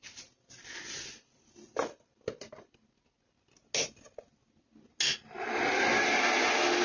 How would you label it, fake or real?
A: real